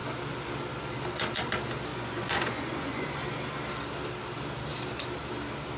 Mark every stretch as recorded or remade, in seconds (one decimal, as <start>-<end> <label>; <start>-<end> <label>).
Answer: 0.0-1.9 recorded; 1.9-3.2 remade; 3.2-5.8 recorded